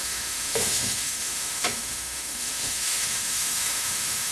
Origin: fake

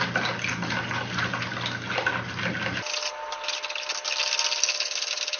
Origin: real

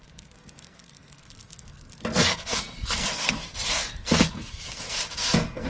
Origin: fake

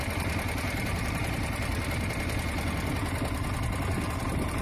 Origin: real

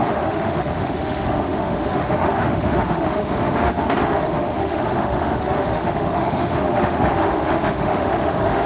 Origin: fake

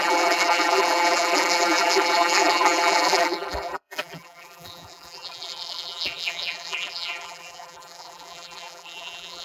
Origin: fake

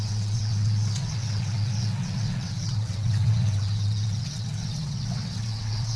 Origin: fake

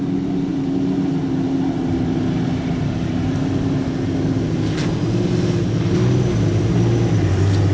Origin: real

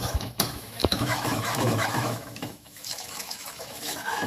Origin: fake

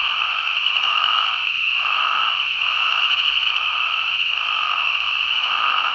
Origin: fake